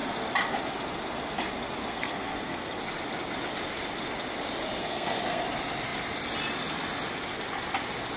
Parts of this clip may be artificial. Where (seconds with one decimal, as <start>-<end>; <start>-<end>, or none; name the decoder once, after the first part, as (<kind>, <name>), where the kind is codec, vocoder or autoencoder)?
1.9-2.8 (codec, SNAC); 4.8-5.4